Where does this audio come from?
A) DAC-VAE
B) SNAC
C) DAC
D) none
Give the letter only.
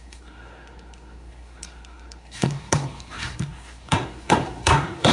B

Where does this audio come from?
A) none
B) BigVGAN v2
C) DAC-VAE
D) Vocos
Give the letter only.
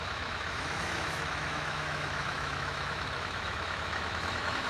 C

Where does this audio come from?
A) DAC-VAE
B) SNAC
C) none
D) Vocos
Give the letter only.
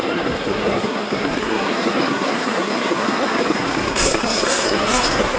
B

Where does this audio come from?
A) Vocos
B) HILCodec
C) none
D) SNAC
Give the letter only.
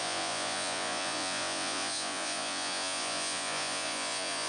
A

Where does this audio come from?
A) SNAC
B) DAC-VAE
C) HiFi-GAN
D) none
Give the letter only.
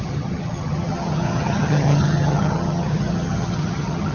C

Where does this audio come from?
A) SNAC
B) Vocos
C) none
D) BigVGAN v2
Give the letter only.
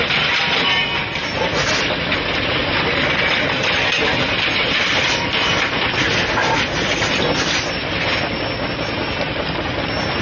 C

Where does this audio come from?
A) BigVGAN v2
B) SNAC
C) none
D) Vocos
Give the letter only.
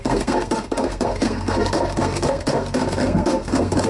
B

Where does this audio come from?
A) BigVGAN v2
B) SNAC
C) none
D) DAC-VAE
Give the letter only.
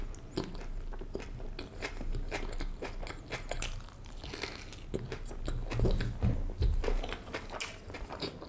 C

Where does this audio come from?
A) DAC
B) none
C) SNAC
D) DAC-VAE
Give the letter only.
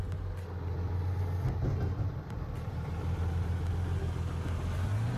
B